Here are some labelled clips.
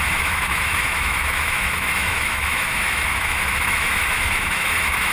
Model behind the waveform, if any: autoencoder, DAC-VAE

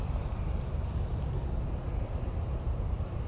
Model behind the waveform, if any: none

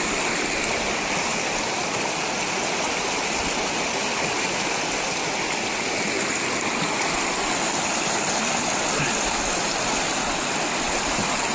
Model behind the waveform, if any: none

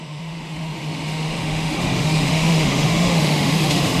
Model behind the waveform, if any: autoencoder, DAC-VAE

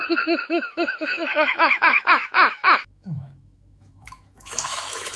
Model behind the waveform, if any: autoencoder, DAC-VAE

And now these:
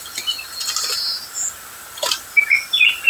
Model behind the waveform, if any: none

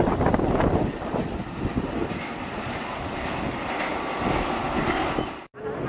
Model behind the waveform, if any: none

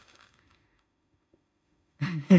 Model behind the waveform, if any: autoencoder, DAC-VAE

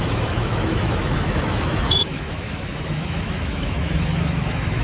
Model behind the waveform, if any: autoencoder, DAC-VAE